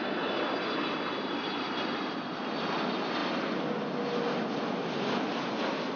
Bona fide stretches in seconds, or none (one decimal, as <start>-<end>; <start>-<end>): 0.0-6.0

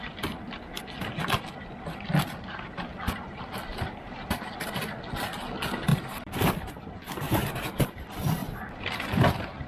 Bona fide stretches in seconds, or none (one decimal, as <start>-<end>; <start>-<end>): 0.0-2.9; 4.9-5.9; 6.8-8.4; 9.0-9.7

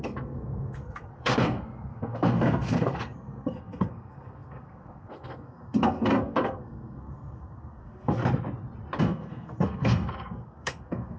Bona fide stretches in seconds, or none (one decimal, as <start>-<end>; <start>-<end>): 8.2-9.0

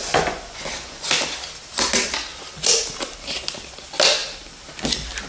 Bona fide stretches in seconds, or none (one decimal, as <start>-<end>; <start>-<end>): 1.1-5.3